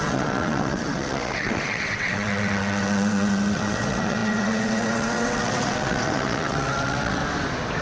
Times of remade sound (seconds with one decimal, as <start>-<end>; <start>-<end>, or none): 0.0-7.2